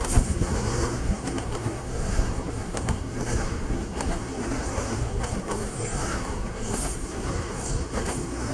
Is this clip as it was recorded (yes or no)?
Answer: no